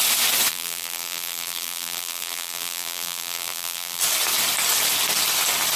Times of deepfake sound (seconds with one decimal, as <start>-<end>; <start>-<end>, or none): 0.5-4.0